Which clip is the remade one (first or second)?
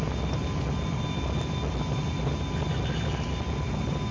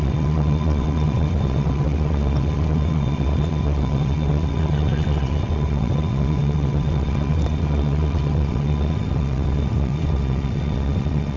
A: second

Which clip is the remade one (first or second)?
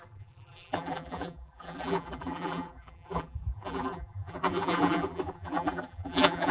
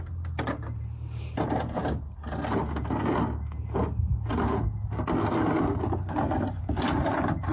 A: first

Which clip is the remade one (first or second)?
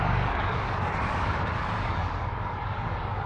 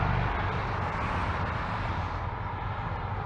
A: first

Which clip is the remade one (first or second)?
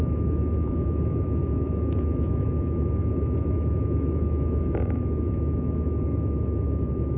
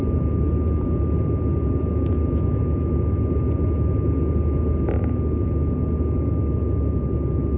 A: first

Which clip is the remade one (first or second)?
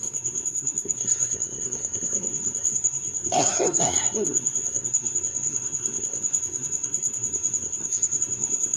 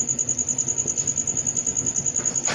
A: first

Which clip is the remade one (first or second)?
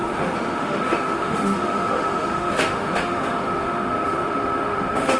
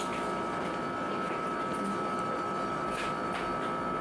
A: first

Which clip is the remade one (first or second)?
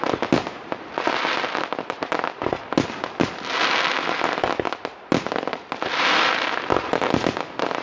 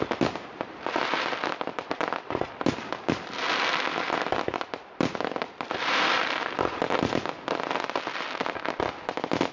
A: second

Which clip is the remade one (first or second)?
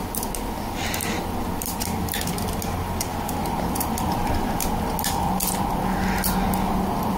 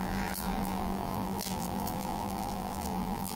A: second